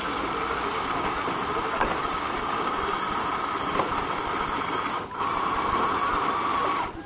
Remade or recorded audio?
recorded